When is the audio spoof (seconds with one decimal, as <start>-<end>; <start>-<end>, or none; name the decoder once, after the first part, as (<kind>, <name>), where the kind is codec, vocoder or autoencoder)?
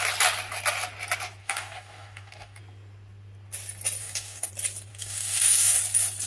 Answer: 1.4-2.6 (codec, DAC); 4.0-4.5; 4.9-5.8